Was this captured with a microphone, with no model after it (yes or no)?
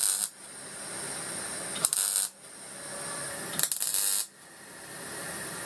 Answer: yes